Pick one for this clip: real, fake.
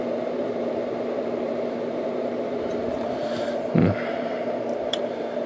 fake